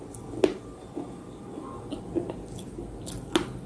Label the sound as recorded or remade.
recorded